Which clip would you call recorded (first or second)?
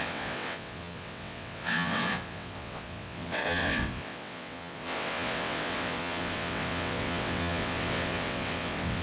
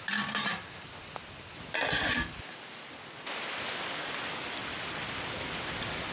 second